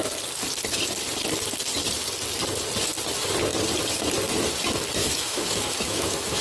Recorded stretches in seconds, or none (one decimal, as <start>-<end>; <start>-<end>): 0.0-5.0